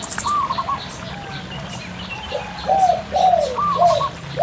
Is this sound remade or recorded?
recorded